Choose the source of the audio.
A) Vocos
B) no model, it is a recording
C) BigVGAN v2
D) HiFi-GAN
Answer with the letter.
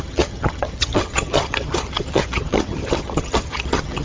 D